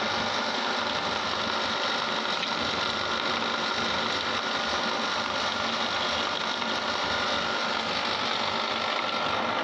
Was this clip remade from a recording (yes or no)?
no